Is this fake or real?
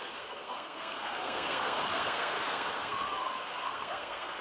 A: fake